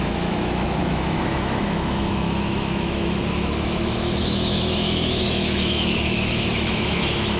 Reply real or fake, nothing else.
fake